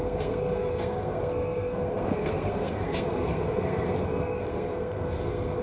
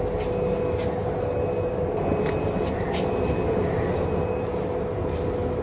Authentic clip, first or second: second